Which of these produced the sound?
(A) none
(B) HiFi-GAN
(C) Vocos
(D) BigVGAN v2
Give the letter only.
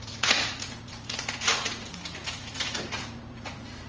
C